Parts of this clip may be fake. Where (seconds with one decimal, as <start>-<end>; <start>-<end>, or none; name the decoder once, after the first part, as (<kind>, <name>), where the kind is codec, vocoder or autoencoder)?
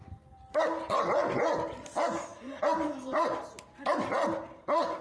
none